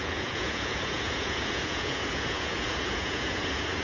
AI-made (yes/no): yes